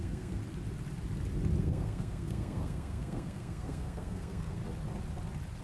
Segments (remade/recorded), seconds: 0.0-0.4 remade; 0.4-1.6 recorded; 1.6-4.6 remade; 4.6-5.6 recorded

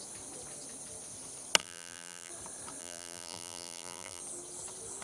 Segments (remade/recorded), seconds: 0.0-1.6 recorded; 1.6-2.3 remade; 2.3-2.8 recorded; 2.8-4.2 remade; 4.2-5.0 recorded

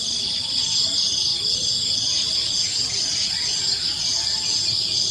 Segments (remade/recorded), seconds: 0.0-5.1 recorded

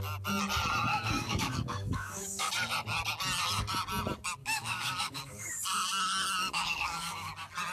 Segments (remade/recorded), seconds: 0.0-0.9 recorded; 0.9-2.5 remade; 2.5-4.4 recorded; 4.4-5.5 remade; 5.5-6.4 recorded; 6.4-7.3 remade; 7.3-7.7 recorded

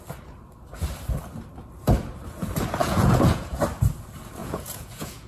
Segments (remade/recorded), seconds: 0.0-2.8 recorded; 2.8-3.6 remade; 3.6-4.4 recorded; 4.4-5.3 remade

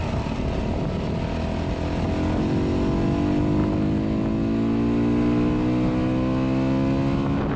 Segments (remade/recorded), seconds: 0.0-7.6 recorded

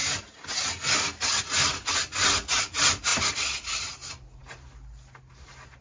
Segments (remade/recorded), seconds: 0.0-5.8 recorded

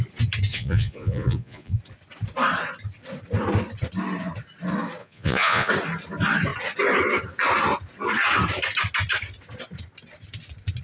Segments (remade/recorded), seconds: 0.0-0.5 recorded; 0.5-1.8 remade; 1.8-5.0 recorded; 5.0-5.7 remade; 5.7-10.8 recorded